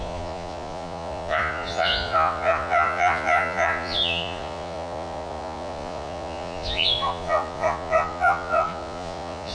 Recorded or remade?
remade